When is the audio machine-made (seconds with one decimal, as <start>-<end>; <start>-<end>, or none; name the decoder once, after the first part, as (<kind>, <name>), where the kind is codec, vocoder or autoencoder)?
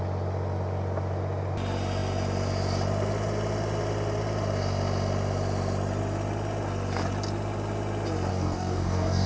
8.3-9.3 (codec, DAC)